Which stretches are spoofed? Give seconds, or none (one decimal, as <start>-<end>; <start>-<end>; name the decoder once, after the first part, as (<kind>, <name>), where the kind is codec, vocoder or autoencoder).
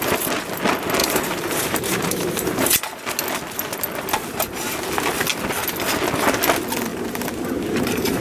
1.0-3.1 (vocoder, BigVGAN v2); 6.9-8.2